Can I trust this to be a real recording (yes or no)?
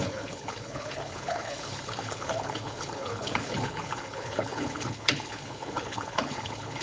no